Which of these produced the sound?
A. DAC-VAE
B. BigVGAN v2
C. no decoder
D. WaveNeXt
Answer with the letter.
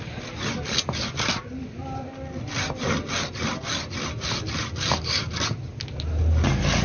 C